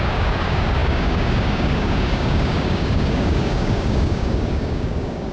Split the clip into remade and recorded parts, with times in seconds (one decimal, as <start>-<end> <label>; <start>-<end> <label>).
0.0-5.3 remade